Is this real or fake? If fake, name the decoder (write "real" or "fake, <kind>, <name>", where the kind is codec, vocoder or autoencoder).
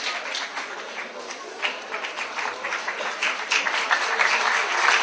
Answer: real